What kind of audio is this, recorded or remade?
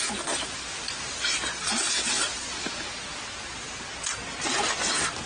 recorded